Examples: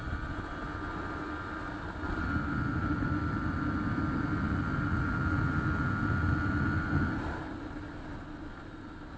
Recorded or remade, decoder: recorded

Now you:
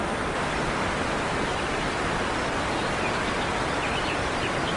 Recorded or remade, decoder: recorded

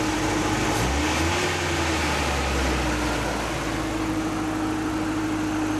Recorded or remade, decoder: recorded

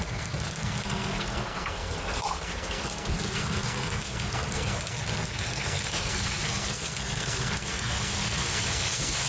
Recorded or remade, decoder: remade, codec, SNAC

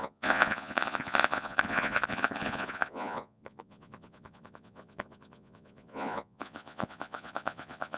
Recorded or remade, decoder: remade, vocoder, Vocos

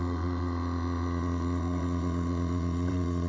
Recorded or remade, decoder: remade, vocoder, WaveNeXt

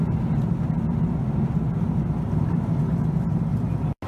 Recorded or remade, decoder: recorded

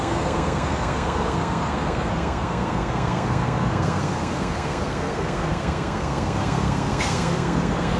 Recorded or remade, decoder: remade, codec, SNAC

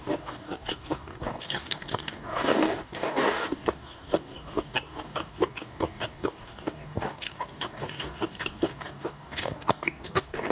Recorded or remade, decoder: remade, codec, DAC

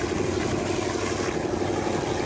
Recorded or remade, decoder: recorded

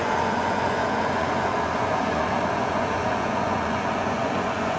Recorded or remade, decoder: remade, vocoder, Vocos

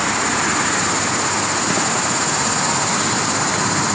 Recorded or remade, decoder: recorded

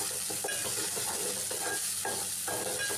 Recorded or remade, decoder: recorded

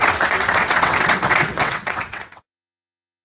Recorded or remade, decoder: remade, vocoder, WaveNeXt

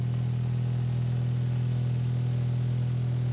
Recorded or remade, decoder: recorded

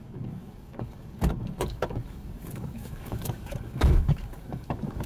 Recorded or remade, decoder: remade, codec, DAC